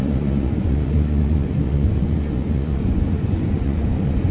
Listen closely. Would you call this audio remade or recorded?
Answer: remade